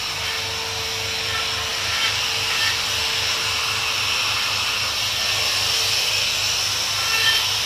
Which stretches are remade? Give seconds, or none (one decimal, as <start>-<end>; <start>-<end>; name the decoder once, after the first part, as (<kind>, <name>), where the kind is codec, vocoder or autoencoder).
none